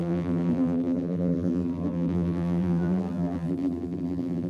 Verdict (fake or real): fake